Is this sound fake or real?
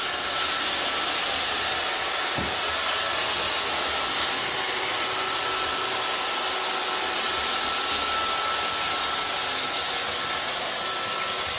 real